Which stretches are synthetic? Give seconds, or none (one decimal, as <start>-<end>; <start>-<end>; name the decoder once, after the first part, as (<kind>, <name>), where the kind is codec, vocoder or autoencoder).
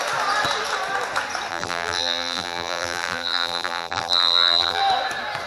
1.5-4.8 (vocoder, BigVGAN v2)